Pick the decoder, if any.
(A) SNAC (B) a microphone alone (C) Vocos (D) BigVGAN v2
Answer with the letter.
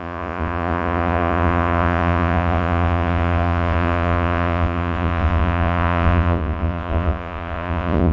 C